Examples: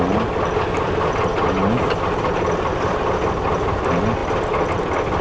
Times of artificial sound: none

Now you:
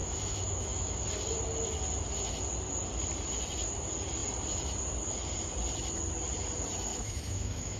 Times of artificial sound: 0.0-1.0 (autoencoder, DAC-VAE); 6.9-7.8

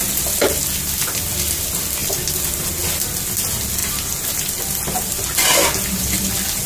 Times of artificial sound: none

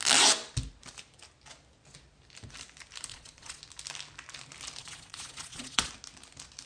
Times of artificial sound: 3.1-3.6 (vocoder, Vocos); 4.8-5.9

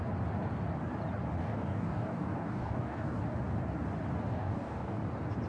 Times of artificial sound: 1.4-3.2 (codec, DAC); 4.3-5.0

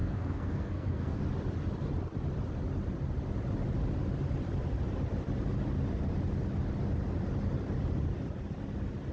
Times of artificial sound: 0.0-1.2 (codec, SNAC)